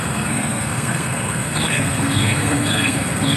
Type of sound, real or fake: fake